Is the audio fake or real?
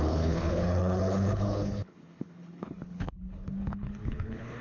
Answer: fake